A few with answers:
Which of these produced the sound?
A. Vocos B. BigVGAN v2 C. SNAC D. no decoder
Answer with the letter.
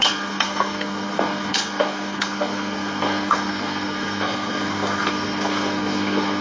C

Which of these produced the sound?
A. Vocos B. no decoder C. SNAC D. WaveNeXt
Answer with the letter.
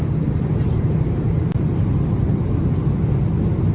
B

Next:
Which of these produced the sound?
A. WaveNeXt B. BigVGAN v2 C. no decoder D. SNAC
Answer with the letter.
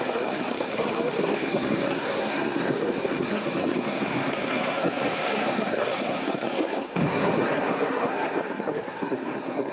D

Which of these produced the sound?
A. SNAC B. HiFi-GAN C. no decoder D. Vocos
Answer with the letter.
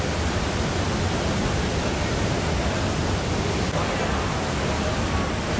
C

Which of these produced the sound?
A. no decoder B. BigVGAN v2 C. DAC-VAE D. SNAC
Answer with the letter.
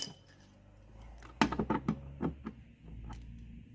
A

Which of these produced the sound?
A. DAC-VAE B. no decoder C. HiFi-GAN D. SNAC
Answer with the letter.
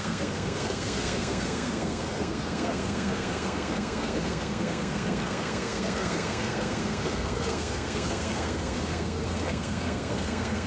D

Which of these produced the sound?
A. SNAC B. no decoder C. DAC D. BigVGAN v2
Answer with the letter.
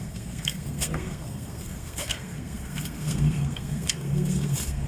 A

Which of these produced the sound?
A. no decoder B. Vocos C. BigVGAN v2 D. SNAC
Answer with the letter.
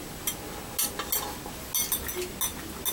A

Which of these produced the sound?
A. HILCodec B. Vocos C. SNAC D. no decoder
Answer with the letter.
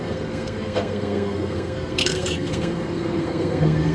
C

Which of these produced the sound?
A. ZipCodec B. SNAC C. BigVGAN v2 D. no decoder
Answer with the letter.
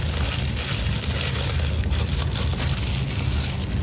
D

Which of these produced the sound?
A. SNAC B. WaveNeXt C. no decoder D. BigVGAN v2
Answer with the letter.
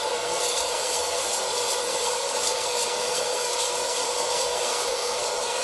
A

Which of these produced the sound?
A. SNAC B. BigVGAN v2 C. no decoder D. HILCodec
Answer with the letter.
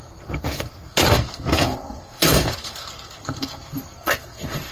A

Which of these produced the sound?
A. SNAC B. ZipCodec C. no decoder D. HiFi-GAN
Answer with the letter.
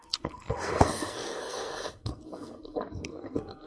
A